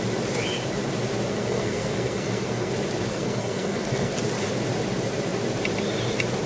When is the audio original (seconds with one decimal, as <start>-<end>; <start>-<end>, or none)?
0.0-1.3; 2.7-3.1; 4.1-6.5